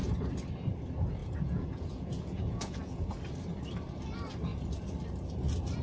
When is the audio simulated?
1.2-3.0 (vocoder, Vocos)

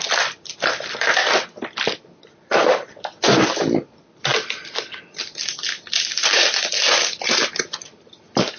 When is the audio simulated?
none